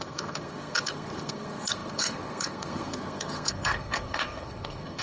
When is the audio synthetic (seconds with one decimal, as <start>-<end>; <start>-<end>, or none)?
0.0-5.0